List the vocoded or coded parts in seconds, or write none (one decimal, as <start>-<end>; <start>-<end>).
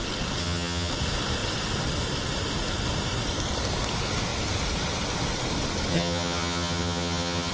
0.4-0.9; 5.9-7.5